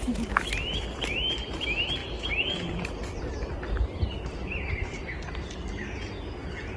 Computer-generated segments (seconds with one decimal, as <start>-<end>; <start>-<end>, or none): none